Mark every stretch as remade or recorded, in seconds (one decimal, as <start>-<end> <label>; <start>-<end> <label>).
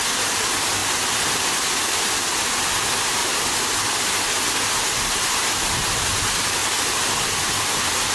0.0-8.1 recorded